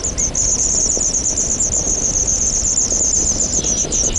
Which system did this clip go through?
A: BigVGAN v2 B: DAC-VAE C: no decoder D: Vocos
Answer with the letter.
C